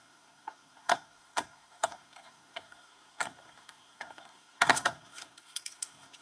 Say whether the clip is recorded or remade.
remade